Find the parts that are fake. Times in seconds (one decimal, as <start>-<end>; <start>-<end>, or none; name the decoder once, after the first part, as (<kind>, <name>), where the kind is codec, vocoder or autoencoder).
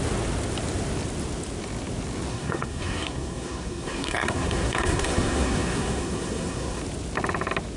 2.3-6.8 (codec, SNAC)